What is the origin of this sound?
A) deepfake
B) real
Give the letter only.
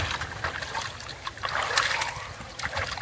B